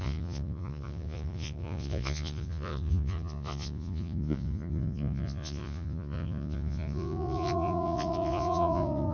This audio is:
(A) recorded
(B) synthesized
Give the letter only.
B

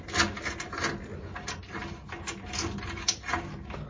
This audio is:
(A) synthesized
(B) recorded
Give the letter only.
B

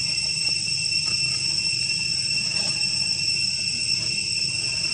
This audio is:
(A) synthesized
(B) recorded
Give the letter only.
B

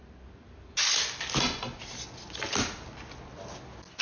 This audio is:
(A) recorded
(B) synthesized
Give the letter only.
A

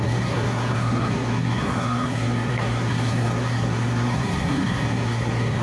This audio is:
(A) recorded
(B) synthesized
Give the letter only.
B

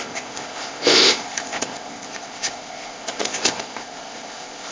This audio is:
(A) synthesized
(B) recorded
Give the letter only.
A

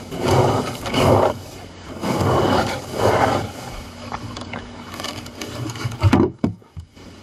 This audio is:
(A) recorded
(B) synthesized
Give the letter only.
B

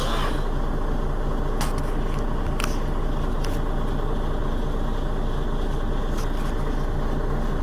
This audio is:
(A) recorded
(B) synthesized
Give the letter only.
A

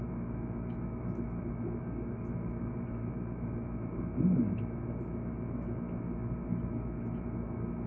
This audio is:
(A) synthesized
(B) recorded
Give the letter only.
A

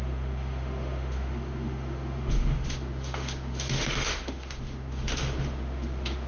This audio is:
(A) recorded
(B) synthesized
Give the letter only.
B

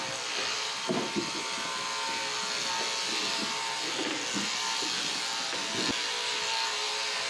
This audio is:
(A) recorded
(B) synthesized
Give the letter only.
A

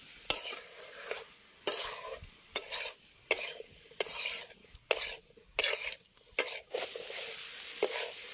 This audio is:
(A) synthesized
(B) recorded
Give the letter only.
B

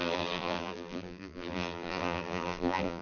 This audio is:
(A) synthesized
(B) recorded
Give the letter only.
A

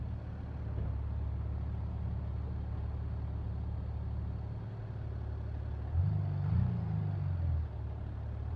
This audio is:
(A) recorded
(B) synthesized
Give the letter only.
A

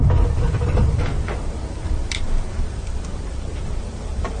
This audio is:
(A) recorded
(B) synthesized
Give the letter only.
B